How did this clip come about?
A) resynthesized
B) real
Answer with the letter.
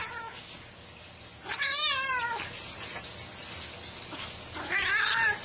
B